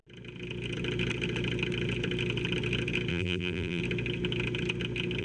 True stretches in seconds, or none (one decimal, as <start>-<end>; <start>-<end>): 0.0-3.1; 3.8-5.2